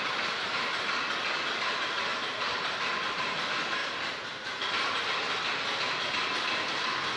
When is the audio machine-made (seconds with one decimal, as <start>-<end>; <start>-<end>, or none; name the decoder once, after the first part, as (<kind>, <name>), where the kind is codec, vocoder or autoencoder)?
2.1-3.2 (vocoder, BigVGAN v2)